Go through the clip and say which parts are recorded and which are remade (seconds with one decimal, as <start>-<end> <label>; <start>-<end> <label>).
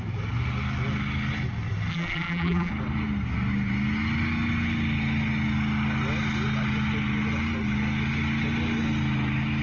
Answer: 0.0-1.9 recorded; 1.9-2.7 remade; 2.7-9.6 recorded